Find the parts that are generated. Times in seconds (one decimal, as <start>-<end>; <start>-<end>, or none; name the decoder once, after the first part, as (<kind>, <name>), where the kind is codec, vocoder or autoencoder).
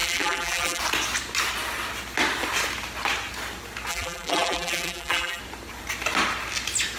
0.0-0.8 (vocoder, BigVGAN v2); 3.9-5.4